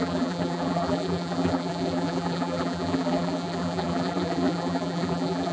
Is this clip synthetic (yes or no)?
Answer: yes